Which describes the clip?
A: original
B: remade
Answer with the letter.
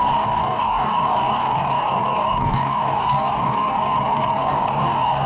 B